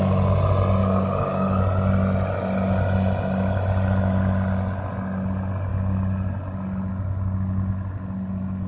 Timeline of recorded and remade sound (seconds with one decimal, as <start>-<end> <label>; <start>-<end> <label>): 0.0-0.8 recorded; 0.8-1.6 remade; 1.6-8.7 recorded